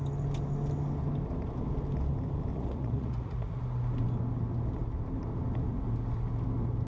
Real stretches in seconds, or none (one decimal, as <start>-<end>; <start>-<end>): 0.0-2.5; 3.6-6.9

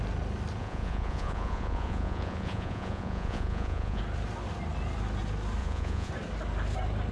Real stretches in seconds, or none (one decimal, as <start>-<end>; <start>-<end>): 0.0-0.6; 4.0-5.6; 6.1-7.1

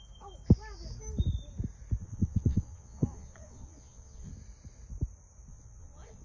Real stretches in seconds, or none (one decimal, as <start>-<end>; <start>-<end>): 0.0-2.0; 4.3-5.5

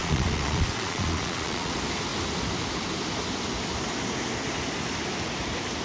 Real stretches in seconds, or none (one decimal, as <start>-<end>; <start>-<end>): 1.7-5.8